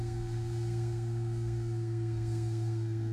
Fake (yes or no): yes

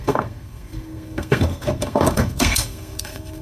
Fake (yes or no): yes